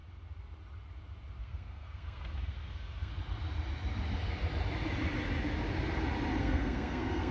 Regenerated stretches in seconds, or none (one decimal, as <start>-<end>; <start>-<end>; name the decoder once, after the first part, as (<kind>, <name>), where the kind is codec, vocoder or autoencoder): 1.4-3.1 (codec, SNAC); 6.4-7.3